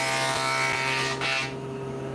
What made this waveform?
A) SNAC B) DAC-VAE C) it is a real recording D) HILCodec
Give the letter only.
C